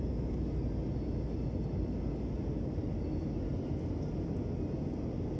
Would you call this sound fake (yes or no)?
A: no